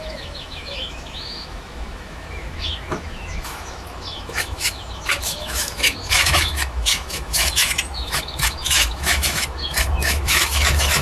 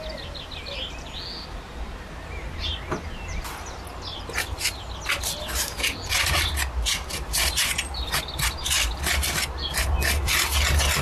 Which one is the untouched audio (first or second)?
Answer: second